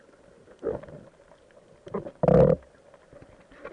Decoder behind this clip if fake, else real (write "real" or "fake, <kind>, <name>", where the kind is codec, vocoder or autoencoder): fake, vocoder, BigVGAN v2